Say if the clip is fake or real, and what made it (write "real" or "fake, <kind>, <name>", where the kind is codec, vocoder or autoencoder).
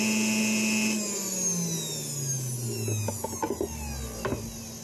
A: real